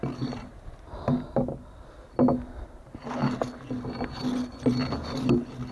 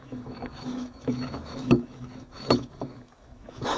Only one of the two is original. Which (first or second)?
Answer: first